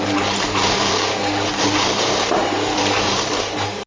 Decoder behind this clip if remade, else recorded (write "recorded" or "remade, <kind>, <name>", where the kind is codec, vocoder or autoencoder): remade, vocoder, BigVGAN v2